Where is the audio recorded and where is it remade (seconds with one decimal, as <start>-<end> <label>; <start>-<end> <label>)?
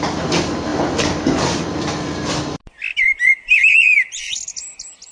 0.0-2.9 recorded; 2.9-4.4 remade; 4.4-5.1 recorded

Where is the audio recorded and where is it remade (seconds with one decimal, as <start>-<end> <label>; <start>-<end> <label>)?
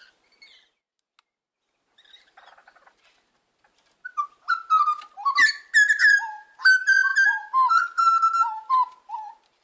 0.0-9.6 recorded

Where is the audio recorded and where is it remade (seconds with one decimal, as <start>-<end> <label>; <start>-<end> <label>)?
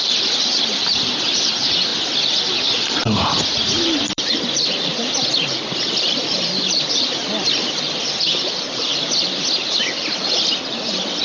0.0-1.9 remade; 1.9-4.0 recorded; 4.0-11.2 remade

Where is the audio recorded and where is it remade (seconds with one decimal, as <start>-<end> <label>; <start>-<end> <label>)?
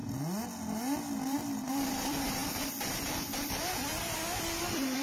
0.0-1.2 recorded; 1.2-5.0 remade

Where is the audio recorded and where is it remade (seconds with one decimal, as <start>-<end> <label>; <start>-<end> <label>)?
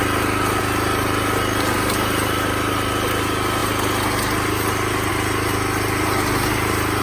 0.0-7.0 recorded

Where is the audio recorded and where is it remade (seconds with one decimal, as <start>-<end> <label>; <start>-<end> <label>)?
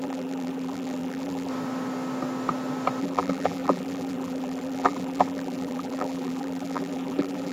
0.0-1.5 remade; 1.5-3.0 recorded; 3.0-7.5 remade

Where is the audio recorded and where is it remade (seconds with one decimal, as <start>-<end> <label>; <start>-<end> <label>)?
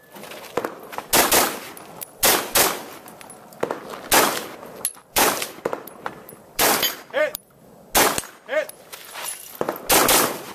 0.0-5.0 recorded; 5.0-7.5 remade; 7.5-10.5 recorded